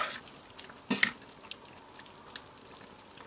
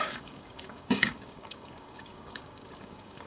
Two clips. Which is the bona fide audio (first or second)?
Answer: first